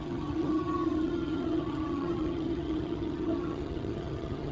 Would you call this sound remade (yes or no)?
yes